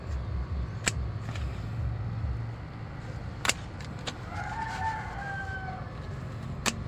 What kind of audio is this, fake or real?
real